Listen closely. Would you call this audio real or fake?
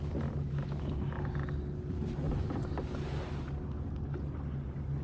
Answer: real